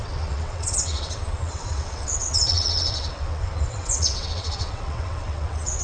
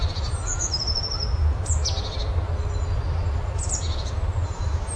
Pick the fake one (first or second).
first